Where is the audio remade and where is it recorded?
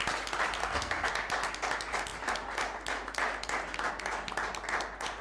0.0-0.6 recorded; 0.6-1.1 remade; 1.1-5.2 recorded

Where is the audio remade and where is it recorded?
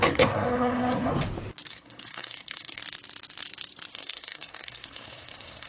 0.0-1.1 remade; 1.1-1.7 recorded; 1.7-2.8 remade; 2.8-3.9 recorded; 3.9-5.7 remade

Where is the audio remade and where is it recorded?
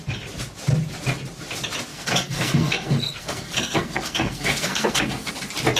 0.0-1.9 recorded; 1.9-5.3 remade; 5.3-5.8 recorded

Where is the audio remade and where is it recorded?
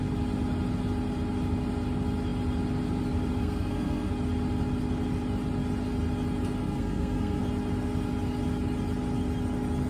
0.0-3.4 recorded; 3.4-4.1 remade; 4.1-6.6 recorded; 6.6-7.4 remade; 7.4-9.9 recorded